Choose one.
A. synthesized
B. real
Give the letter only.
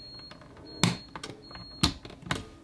B